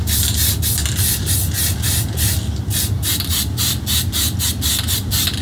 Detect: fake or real real